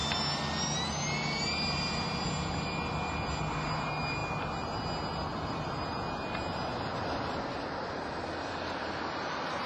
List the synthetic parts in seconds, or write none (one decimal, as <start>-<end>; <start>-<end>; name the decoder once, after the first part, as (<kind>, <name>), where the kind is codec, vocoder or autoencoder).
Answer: none